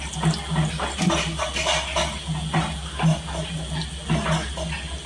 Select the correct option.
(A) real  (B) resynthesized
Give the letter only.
A